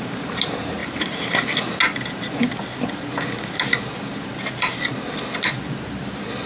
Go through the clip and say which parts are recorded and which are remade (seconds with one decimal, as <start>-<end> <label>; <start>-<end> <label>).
0.0-6.5 recorded